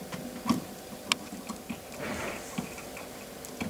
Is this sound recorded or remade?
recorded